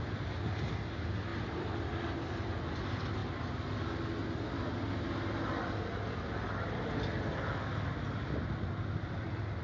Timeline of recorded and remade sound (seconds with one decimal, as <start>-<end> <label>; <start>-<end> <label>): 0.0-1.3 recorded; 1.3-2.2 remade; 2.2-4.2 recorded; 4.2-4.9 remade; 4.9-9.6 recorded